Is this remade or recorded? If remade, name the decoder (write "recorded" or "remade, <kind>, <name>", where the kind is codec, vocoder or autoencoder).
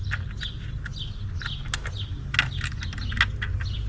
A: recorded